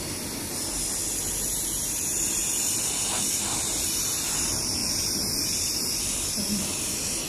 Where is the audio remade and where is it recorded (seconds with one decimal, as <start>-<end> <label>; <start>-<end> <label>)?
0.0-1.0 remade; 1.0-3.2 recorded; 3.2-7.3 remade